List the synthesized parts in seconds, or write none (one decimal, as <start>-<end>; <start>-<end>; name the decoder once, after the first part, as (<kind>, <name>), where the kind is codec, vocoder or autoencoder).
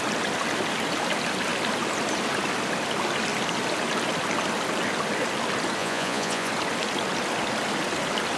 5.8-6.5 (vocoder, Vocos)